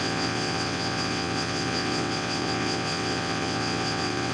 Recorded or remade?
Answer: remade